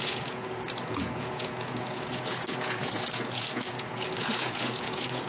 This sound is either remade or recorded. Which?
remade